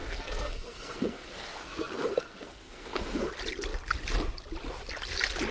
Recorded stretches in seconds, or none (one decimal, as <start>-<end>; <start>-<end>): 3.3-5.5